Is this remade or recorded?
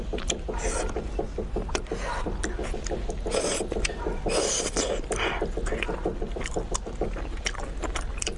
recorded